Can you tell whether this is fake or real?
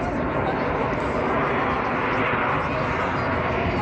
real